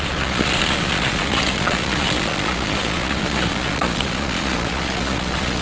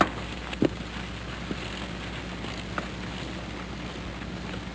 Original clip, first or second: second